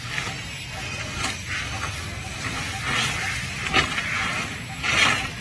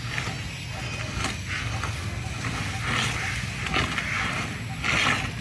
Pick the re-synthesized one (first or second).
first